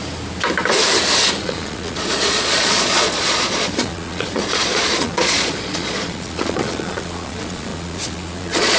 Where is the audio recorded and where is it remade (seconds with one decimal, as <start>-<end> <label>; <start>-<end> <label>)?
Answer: 0.0-1.4 recorded; 1.4-8.8 remade